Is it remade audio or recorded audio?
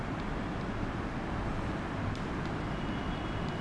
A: recorded